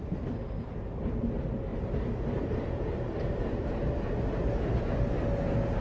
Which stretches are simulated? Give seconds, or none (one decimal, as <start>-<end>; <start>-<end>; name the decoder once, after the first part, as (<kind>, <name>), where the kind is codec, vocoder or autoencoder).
1.7-4.8 (vocoder, BigVGAN v2)